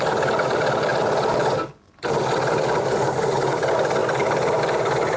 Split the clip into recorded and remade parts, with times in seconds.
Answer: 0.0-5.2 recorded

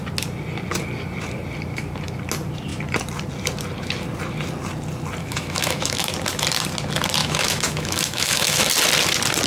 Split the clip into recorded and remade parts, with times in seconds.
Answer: 0.0-5.2 recorded; 5.2-6.1 remade; 6.1-7.2 recorded; 7.2-8.7 remade; 8.7-9.5 recorded

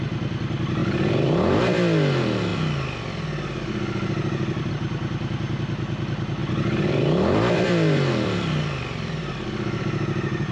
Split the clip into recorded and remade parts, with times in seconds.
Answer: 0.0-0.8 recorded; 0.8-1.6 remade; 1.6-6.4 recorded; 6.4-9.8 remade; 9.8-10.5 recorded